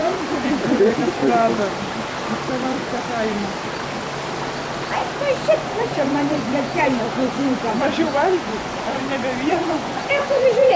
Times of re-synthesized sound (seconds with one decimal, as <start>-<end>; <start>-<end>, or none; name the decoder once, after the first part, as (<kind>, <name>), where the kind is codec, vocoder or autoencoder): 0.0-1.2 (vocoder, Vocos); 5.6-9.0; 9.5-10.8